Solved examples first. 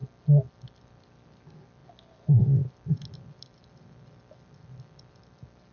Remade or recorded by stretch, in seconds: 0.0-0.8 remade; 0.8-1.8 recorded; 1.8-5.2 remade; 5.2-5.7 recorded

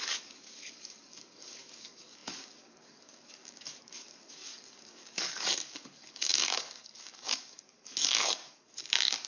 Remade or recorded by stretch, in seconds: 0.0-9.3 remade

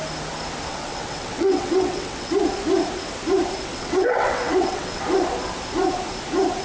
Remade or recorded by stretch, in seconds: 0.0-0.7 recorded; 0.7-2.3 remade; 2.3-3.7 recorded; 3.7-5.0 remade; 5.0-6.6 recorded